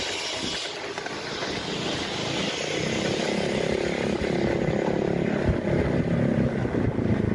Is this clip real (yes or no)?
yes